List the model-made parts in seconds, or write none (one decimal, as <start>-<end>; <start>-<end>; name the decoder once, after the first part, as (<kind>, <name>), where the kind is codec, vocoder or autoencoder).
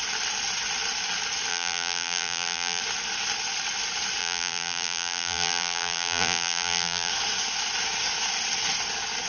1.5-2.8 (vocoder, BigVGAN v2); 4.2-7.1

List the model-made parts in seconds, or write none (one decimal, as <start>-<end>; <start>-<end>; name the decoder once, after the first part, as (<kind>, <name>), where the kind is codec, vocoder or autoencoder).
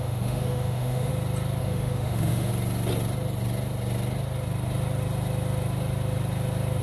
0.0-1.1 (autoencoder, DAC-VAE); 1.6-2.5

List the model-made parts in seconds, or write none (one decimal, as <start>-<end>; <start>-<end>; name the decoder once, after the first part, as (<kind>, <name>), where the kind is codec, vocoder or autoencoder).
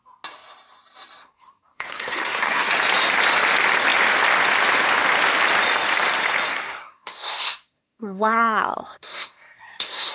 1.2-2.7 (codec, SNAC); 6.5-10.1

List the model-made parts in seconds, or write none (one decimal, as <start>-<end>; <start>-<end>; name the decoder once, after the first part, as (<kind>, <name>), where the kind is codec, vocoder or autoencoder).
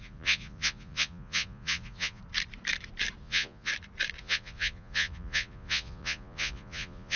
0.0-2.2 (vocoder, Vocos); 3.2-3.7; 4.2-7.2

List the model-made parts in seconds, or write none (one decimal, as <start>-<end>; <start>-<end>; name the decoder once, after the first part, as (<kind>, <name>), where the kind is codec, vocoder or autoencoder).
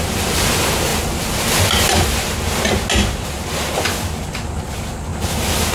none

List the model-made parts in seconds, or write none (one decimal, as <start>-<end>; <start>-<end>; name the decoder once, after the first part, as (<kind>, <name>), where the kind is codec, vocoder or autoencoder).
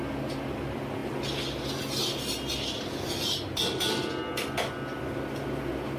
none